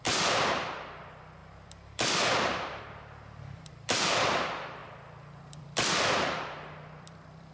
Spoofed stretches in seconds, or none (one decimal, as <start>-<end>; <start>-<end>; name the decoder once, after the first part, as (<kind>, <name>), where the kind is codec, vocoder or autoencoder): 0.0-7.5 (vocoder, BigVGAN v2)